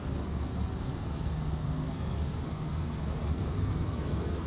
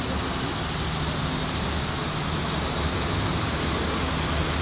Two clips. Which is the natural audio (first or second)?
second